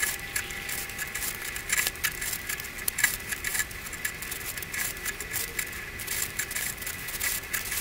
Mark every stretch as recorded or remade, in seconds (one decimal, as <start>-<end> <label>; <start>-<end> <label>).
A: 0.0-7.8 recorded

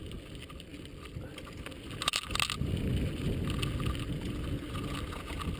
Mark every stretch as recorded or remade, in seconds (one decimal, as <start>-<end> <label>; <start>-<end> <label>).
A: 0.0-5.6 recorded

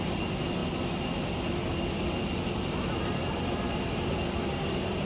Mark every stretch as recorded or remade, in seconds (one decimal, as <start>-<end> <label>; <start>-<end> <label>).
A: 0.0-5.1 recorded

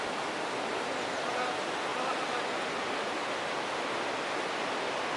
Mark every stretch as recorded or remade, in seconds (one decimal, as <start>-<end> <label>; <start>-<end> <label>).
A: 0.0-5.2 recorded

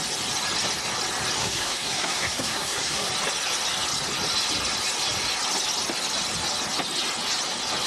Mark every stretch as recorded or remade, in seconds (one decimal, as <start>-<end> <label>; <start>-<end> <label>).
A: 0.0-1.4 recorded; 1.4-3.1 remade; 3.1-7.9 recorded

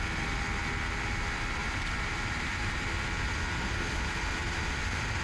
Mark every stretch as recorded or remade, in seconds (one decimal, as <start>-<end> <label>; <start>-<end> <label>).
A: 0.0-1.6 recorded; 1.6-2.8 remade; 2.8-4.4 recorded; 4.4-5.2 remade

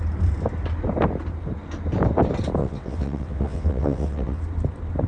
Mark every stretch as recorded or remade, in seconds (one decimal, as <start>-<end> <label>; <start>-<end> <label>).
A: 0.0-2.6 recorded; 2.6-4.4 remade; 4.4-5.1 recorded